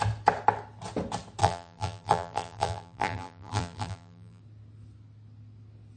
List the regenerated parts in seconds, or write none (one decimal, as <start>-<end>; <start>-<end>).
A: 1.4-4.4